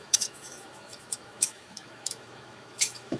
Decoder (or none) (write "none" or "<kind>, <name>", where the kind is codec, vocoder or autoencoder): autoencoder, DAC-VAE